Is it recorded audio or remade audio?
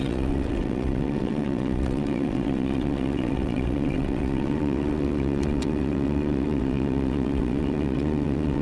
remade